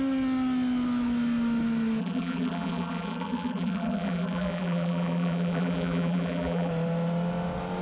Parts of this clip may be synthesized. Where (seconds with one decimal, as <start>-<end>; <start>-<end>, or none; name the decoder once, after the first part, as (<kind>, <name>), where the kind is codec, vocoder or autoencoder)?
2.0-6.7 (vocoder, BigVGAN v2)